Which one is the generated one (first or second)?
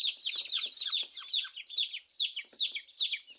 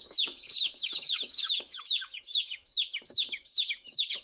second